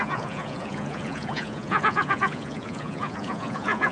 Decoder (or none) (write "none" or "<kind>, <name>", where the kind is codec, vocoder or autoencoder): vocoder, Vocos